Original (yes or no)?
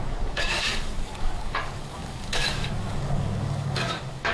no